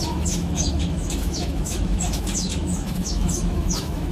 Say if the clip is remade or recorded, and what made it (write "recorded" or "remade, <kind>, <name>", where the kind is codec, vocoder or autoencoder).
remade, autoencoder, DAC-VAE